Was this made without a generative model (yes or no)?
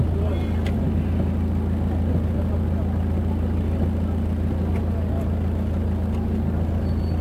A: yes